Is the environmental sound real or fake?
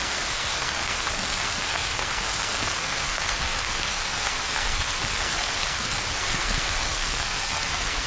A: fake